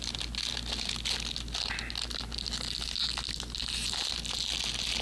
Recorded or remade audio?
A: recorded